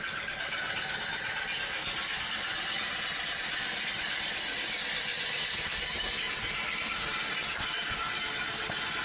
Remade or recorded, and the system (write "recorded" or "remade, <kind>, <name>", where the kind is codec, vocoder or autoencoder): recorded